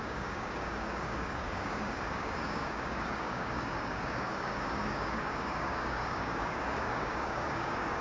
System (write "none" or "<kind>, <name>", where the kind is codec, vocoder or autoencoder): codec, DAC